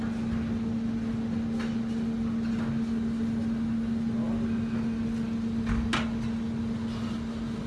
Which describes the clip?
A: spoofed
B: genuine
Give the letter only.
B